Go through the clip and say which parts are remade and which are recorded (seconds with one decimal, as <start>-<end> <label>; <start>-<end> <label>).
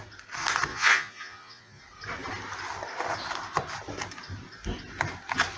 0.0-0.7 recorded; 0.7-1.8 remade; 1.8-5.6 recorded